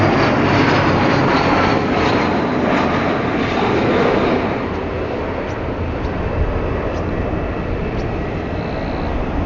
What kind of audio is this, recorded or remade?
recorded